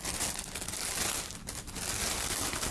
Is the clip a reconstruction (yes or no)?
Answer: no